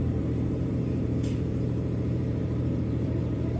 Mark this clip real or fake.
fake